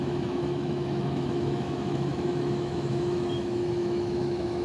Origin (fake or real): fake